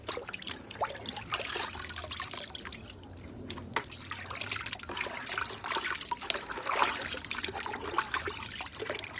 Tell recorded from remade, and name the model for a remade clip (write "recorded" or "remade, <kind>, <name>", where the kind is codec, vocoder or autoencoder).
recorded